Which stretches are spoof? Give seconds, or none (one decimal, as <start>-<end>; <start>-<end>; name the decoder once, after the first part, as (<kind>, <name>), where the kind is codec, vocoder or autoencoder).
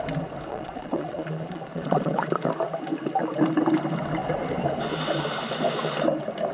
0.5-2.3 (vocoder, Vocos)